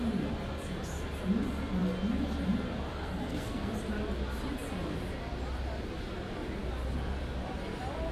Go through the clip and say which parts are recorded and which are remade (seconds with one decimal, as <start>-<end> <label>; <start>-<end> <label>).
0.0-2.9 recorded; 2.9-3.7 remade; 3.7-8.1 recorded